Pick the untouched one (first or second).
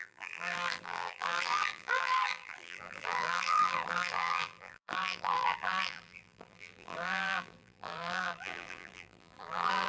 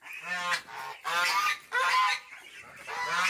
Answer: second